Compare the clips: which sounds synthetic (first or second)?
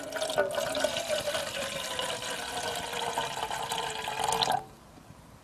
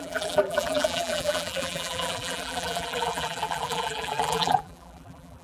second